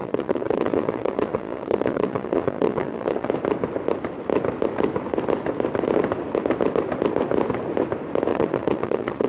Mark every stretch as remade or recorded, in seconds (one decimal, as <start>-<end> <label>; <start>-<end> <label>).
0.0-3.3 remade; 3.3-8.3 recorded; 8.3-9.3 remade